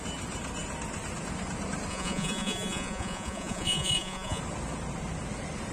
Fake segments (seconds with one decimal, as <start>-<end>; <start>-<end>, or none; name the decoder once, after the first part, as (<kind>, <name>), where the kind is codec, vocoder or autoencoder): 1.9-4.4 (vocoder, Vocos)